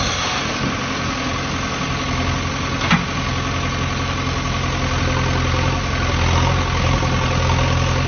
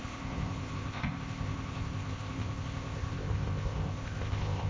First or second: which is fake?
second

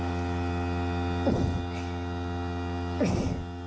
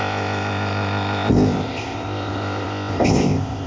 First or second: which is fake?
second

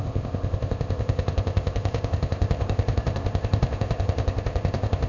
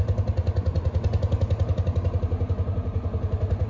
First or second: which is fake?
first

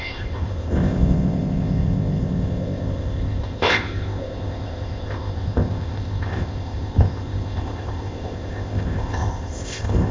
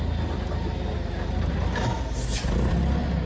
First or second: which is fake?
first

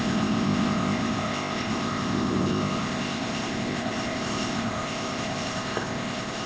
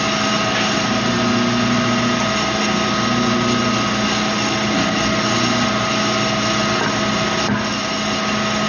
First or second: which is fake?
first